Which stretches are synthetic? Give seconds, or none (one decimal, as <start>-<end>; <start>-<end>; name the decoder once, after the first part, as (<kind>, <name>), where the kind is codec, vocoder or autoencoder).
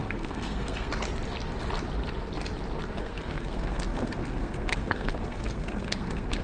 0.0-0.9 (codec, SNAC); 3.0-6.4